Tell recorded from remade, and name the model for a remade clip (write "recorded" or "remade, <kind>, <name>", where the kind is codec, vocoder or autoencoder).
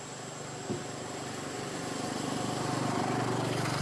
recorded